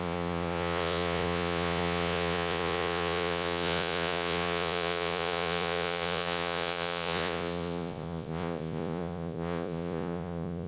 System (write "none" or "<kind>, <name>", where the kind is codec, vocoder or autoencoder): vocoder, Vocos